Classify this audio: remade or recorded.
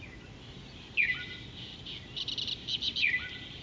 recorded